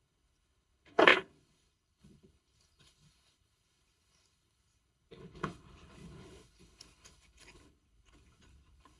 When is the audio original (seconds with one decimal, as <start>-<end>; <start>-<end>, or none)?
none